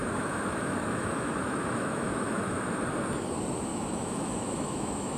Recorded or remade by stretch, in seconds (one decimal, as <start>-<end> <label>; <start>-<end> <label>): 0.0-2.8 remade; 2.8-3.7 recorded; 3.7-5.2 remade

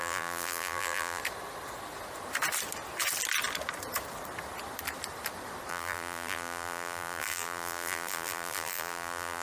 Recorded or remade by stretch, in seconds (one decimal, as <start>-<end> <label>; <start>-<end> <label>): 0.0-1.2 remade; 1.2-5.7 recorded; 5.7-9.4 remade

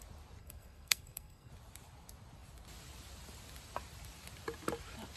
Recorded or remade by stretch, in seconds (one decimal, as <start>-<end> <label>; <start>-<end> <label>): 0.0-0.4 recorded; 0.4-1.5 remade; 1.5-5.2 recorded

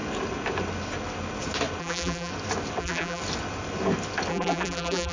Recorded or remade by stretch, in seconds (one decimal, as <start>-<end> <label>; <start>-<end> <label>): 0.0-1.8 recorded; 1.8-2.3 remade; 2.3-2.8 recorded; 2.8-3.2 remade; 3.2-4.3 recorded; 4.3-5.1 remade